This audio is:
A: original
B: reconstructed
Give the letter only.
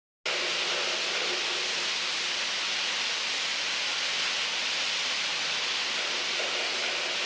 A